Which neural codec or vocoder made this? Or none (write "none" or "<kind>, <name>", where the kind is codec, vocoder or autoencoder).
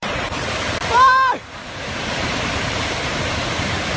vocoder, BigVGAN v2